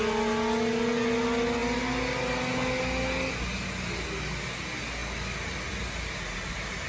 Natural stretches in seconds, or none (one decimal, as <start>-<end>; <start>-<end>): 0.0-6.9